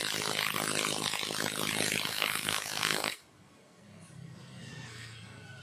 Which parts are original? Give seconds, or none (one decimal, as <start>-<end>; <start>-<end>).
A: 0.0-2.1